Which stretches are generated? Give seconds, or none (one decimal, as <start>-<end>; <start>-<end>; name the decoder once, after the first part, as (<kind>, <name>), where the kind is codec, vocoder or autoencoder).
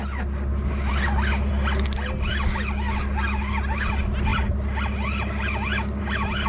none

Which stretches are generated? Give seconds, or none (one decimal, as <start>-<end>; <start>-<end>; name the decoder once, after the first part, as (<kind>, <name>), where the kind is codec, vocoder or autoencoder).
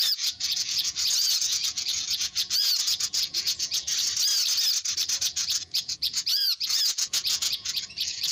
0.0-3.9 (vocoder, Vocos); 5.2-8.3